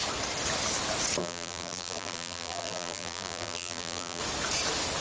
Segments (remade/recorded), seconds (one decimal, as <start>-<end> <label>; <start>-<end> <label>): 0.0-1.2 recorded; 1.2-4.2 remade; 4.2-5.0 recorded